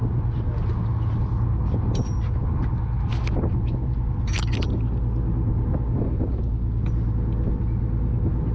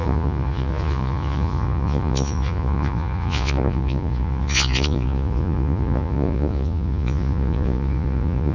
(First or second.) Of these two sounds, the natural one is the first